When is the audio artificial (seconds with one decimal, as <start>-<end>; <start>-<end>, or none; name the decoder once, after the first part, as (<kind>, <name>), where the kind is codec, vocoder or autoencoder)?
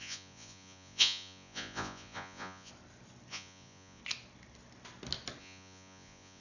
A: 0.0-2.7 (vocoder, Vocos); 3.3-4.0; 5.4-6.4